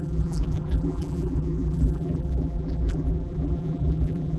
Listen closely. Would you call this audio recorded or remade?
remade